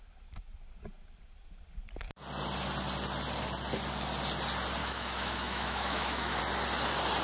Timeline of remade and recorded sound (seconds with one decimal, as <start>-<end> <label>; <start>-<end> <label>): 0.0-4.8 recorded; 4.8-6.4 remade; 6.4-7.2 recorded